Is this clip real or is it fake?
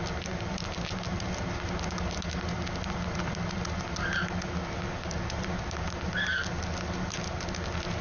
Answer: real